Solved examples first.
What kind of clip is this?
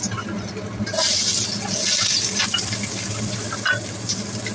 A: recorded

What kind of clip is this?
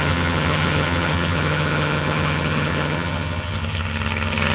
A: remade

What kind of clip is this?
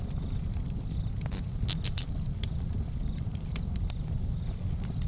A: recorded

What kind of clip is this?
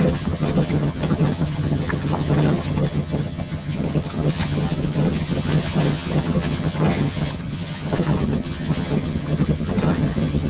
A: remade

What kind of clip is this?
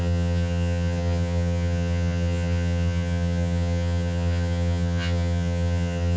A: remade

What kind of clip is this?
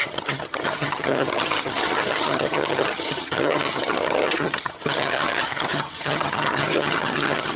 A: remade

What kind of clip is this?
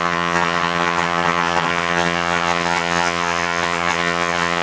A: remade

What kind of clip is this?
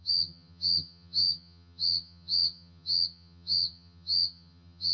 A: remade